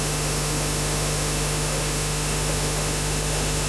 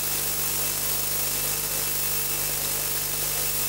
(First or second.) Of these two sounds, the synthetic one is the first